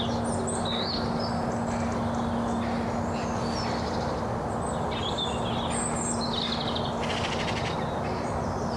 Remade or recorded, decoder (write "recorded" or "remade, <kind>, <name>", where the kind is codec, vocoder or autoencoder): recorded